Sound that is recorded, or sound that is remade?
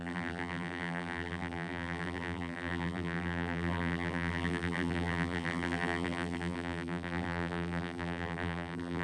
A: remade